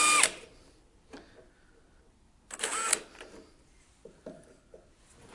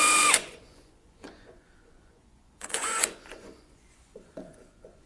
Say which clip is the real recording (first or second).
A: first